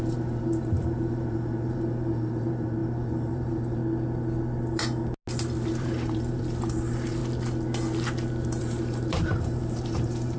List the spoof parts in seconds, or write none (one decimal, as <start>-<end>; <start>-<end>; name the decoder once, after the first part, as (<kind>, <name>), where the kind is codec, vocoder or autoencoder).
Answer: 0.0-3.8 (vocoder, BigVGAN v2); 5.7-7.2; 8.6-10.4